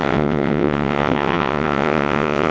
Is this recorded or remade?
remade